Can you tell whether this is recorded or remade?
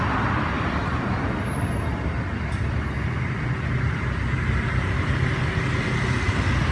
recorded